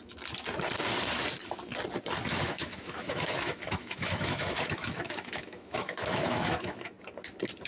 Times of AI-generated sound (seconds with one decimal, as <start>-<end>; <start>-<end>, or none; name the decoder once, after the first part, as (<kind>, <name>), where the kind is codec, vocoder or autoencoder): 2.3-6.9 (autoencoder, DAC-VAE)